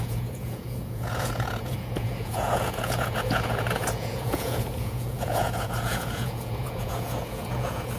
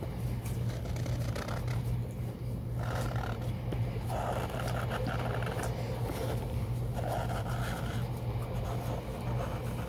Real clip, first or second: second